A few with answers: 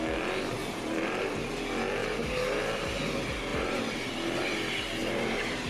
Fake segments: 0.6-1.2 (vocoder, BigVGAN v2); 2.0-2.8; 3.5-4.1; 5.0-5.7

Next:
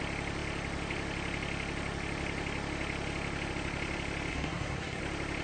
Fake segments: 4.3-5.0 (codec, SNAC)

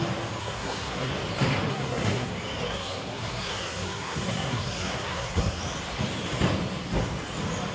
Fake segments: 0.4-1.1 (codec, SNAC); 1.7-2.3; 2.7-5.6

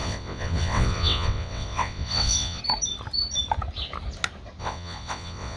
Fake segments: 0.0-2.6 (vocoder, WaveNeXt); 4.6-5.6

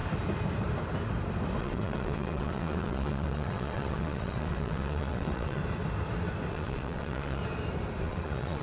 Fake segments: 1.6-5.6 (vocoder, WaveNeXt); 6.5-7.4; 8.0-8.6

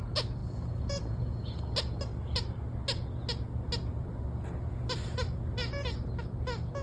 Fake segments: 0.4-1.6 (vocoder, Vocos)